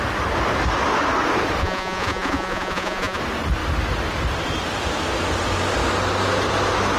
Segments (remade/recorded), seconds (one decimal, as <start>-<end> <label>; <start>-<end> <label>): 0.0-1.6 recorded; 1.6-3.2 remade; 3.2-7.0 recorded